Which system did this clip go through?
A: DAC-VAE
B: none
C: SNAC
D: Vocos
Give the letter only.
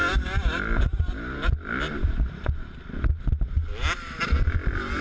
B